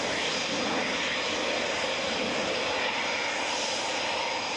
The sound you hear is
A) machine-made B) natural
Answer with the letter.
B